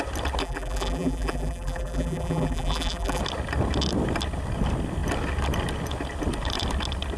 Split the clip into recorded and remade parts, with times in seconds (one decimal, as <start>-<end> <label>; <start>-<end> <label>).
0.0-0.4 recorded; 0.4-3.2 remade; 3.2-7.2 recorded